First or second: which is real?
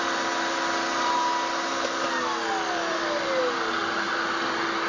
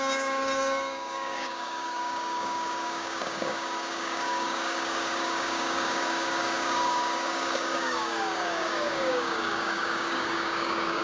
first